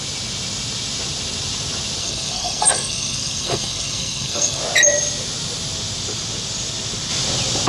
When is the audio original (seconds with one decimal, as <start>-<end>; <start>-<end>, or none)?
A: 0.0-2.0; 4.6-7.7